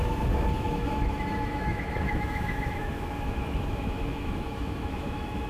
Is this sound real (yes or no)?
no